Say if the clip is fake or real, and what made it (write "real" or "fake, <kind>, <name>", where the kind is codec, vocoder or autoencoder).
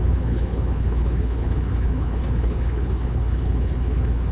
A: fake, codec, HILCodec